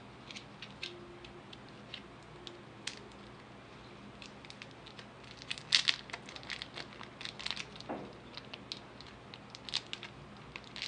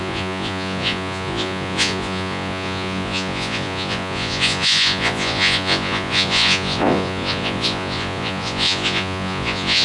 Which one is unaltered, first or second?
first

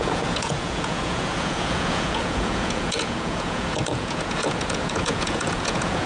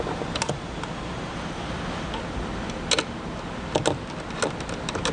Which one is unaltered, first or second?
second